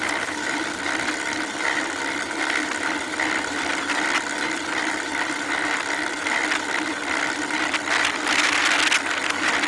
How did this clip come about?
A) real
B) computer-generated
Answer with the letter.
A